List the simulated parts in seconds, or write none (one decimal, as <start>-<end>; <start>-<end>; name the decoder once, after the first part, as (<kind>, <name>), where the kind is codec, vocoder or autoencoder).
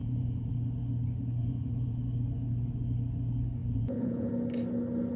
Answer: 0.0-0.5 (vocoder, Vocos); 1.4-2.0; 3.6-4.3